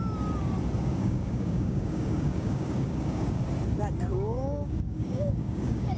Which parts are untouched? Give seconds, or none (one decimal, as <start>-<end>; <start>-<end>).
0.0-0.9; 3.4-4.1